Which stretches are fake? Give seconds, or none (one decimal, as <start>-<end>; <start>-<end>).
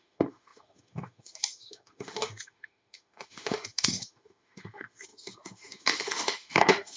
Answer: 0.0-7.0